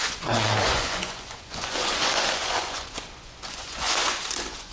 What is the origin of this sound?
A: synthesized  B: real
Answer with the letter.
A